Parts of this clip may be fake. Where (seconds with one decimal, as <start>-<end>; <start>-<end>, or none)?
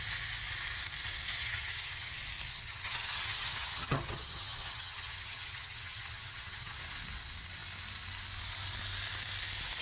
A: 1.4-2.1; 2.5-6.8